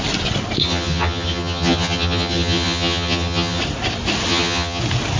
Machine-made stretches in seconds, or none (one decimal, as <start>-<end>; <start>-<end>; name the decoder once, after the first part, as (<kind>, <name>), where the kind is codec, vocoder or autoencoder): 0.6-3.6 (vocoder, HiFi-GAN); 4.3-4.8